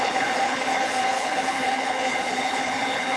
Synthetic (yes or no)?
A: yes